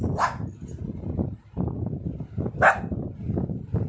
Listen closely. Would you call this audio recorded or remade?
recorded